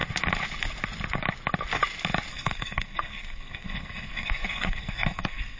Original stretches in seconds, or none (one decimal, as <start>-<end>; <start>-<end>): 0.0-2.3

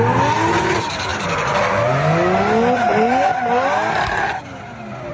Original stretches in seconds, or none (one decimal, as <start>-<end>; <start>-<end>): 0.0-1.1; 1.8-5.1

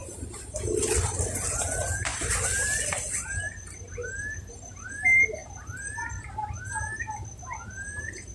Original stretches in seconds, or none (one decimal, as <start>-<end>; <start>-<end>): 0.0-8.3

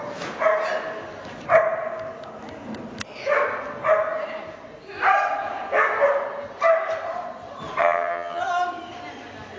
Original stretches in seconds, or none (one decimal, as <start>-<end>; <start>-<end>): 0.0-7.8; 8.4-9.6